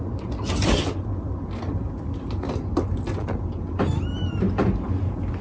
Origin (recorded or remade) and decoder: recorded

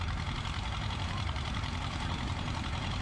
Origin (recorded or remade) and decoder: remade, vocoder, BigVGAN v2